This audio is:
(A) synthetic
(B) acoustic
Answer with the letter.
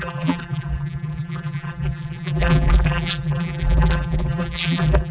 A